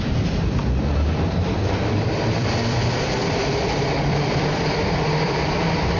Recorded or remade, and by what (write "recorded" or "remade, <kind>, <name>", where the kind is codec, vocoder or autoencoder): remade, vocoder, BigVGAN v2